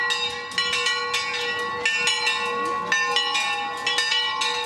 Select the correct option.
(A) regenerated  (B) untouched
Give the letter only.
B